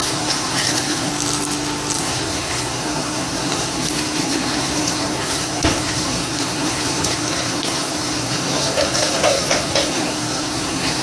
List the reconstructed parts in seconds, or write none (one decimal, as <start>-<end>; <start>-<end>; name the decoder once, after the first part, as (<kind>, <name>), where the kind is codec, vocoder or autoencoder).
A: 0.0-1.1 (codec, SNAC); 2.0-11.0